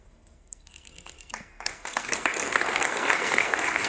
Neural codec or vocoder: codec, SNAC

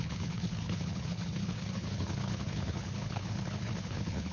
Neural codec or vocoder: codec, HILCodec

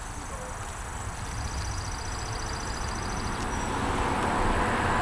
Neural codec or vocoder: none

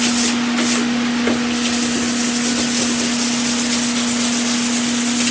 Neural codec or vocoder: none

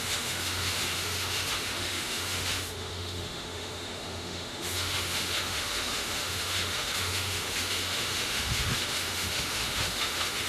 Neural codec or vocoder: autoencoder, DAC-VAE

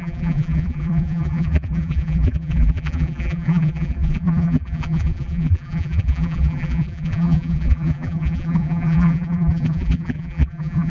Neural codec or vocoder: vocoder, BigVGAN v2